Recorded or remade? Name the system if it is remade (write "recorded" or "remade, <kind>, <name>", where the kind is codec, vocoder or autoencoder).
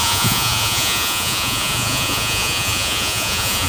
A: remade, vocoder, Vocos